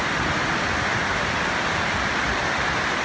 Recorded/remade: recorded